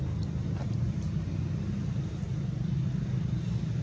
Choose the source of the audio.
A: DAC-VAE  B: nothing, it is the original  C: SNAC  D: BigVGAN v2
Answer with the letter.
B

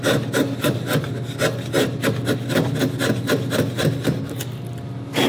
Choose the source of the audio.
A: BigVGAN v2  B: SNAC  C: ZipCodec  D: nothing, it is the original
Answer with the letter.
D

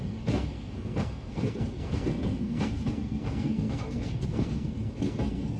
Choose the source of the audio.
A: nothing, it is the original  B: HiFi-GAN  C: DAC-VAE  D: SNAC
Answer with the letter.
D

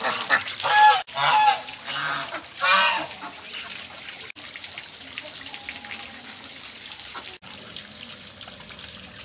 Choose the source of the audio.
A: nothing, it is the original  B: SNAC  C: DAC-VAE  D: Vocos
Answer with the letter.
A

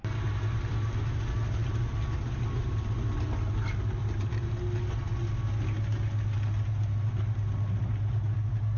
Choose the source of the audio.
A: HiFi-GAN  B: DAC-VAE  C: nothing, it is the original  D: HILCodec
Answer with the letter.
C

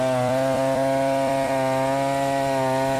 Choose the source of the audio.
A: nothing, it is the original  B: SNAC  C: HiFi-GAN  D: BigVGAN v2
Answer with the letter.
D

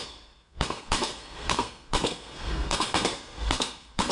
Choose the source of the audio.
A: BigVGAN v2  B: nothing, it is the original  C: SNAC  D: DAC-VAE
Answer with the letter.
C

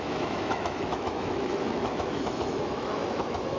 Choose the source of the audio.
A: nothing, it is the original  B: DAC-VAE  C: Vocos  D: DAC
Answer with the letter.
B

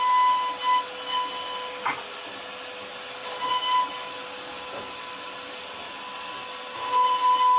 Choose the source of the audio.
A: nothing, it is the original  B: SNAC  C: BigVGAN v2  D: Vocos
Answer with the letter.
A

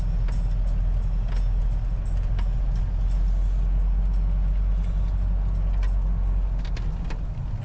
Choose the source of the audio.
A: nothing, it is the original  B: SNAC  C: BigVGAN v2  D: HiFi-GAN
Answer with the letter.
A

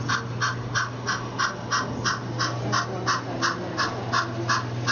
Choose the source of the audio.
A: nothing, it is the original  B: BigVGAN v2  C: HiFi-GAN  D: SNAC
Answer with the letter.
A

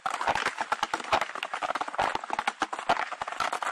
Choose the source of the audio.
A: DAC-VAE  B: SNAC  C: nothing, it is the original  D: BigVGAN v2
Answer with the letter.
C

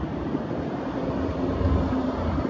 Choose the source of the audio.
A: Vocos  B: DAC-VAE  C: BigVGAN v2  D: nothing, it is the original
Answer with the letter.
D